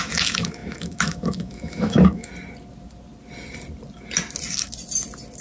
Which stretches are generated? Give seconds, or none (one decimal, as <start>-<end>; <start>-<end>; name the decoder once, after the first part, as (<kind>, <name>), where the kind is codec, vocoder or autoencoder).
0.0-2.3 (autoencoder, DAC-VAE)